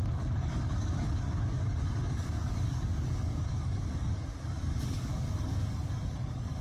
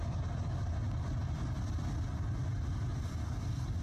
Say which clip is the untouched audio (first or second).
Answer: second